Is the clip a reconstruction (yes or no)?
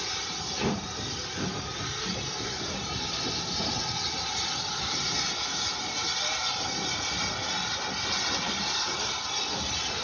no